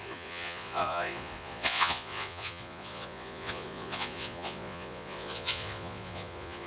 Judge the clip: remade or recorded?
remade